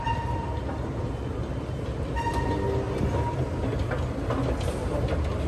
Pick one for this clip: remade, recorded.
recorded